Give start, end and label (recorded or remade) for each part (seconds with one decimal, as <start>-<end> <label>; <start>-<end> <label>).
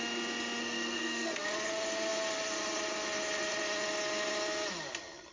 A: 0.0-0.6 recorded; 0.6-1.5 remade; 1.5-5.3 recorded